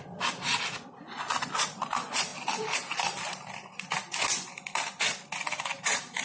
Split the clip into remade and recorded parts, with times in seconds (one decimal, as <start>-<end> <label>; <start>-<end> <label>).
0.0-6.2 recorded